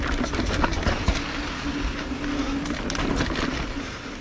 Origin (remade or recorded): recorded